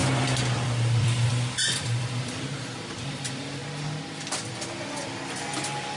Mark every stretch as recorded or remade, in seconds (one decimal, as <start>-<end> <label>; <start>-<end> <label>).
0.0-3.6 remade; 3.6-4.2 recorded; 4.2-6.0 remade